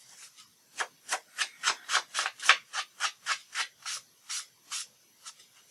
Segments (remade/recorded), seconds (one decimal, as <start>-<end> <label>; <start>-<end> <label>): 0.0-0.5 recorded; 0.5-3.0 remade; 3.0-5.7 recorded